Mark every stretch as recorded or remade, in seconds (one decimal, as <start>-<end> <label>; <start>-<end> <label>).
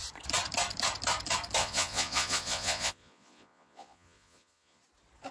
0.0-1.6 recorded; 1.6-4.8 remade; 4.8-5.3 recorded